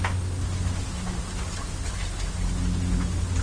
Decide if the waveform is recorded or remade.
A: recorded